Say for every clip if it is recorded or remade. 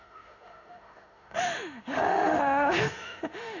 remade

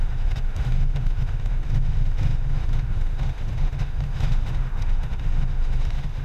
remade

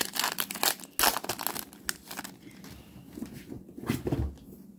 recorded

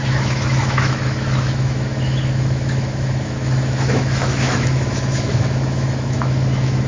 remade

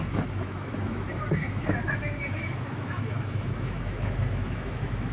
remade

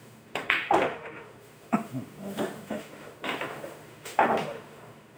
remade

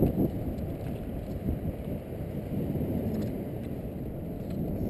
recorded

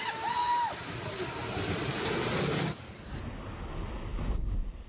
recorded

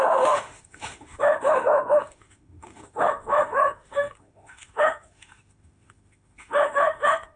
remade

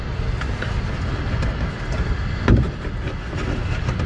recorded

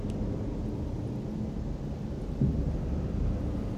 recorded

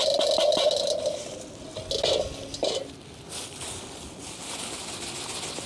recorded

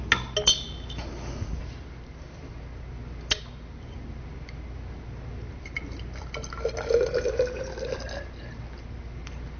recorded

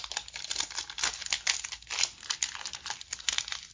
recorded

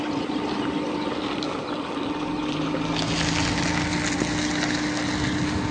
recorded